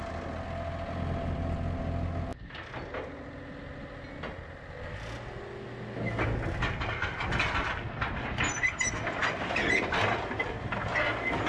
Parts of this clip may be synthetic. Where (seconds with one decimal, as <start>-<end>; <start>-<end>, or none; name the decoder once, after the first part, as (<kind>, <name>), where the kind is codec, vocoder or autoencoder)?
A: none